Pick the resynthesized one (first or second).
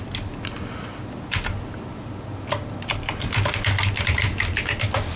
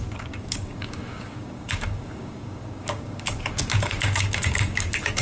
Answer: second